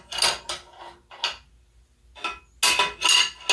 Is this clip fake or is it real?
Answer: real